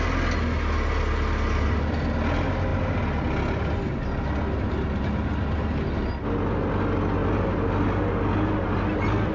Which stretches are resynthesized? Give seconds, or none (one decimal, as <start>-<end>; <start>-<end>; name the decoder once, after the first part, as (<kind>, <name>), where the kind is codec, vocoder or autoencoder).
none